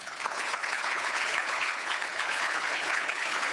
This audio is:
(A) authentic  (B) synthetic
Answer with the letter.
B